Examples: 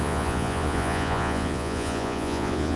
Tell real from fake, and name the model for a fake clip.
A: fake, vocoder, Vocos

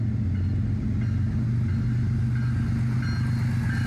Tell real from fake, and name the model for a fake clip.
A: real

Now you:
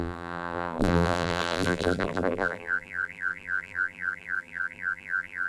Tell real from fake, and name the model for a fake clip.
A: fake, vocoder, BigVGAN v2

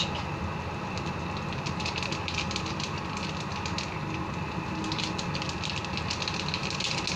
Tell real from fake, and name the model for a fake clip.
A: real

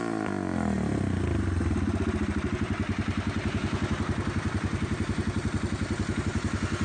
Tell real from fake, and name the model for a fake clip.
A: real